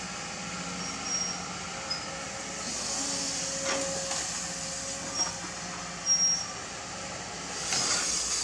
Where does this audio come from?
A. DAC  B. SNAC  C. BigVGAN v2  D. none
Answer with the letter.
D